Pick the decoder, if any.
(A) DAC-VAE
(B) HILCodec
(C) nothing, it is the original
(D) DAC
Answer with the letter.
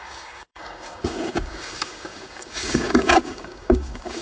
D